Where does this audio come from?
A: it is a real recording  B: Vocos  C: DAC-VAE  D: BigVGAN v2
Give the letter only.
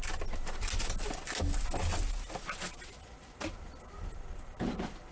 A